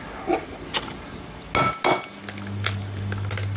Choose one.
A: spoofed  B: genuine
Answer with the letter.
B